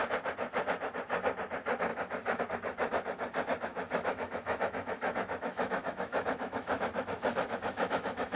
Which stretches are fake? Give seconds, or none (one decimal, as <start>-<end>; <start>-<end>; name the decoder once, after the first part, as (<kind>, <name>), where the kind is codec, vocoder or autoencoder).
1.9-2.4 (autoencoder, DAC-VAE); 3.7-8.4